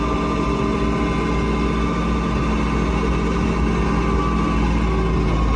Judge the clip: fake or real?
real